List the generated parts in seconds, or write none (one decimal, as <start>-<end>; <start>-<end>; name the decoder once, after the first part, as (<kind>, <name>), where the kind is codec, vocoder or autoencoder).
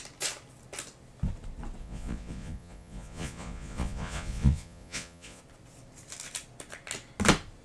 1.8-5.4 (vocoder, Vocos)